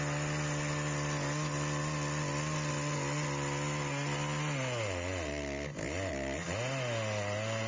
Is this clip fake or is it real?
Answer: real